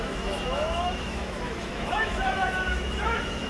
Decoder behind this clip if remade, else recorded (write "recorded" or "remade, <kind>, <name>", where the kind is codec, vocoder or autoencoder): remade, autoencoder, DAC-VAE